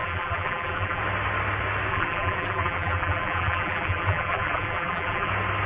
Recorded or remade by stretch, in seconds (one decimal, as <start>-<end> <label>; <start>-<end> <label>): 0.0-1.0 remade; 1.0-1.9 recorded; 1.9-5.3 remade; 5.3-5.7 recorded